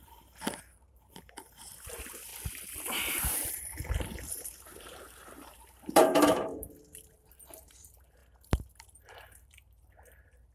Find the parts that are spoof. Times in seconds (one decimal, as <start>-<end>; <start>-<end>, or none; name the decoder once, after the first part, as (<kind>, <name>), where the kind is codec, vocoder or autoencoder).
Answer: 0.0-2.3 (vocoder, BigVGAN v2); 3.3-6.5; 7.1-8.2; 9.1-10.5